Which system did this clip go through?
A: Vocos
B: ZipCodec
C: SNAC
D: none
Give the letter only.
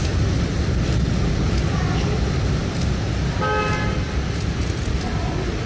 D